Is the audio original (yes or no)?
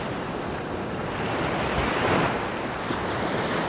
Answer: yes